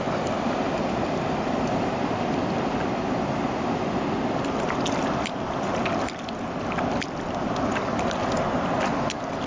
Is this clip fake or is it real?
real